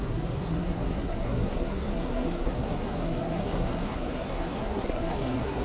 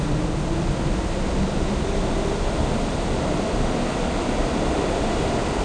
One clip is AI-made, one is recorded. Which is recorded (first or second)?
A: second